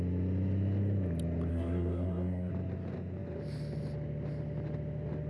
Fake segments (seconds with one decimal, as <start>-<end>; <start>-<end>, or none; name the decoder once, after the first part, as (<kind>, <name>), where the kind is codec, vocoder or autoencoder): 1.5-2.5 (codec, SNAC)